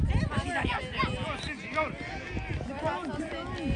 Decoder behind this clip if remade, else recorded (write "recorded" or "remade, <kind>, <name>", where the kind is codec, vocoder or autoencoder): recorded